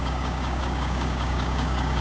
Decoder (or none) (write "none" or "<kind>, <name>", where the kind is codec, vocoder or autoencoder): codec, DAC